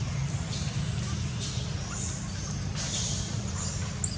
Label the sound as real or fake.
real